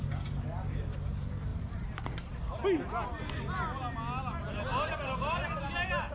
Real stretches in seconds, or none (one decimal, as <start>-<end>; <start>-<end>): 0.0-1.5; 2.3-6.1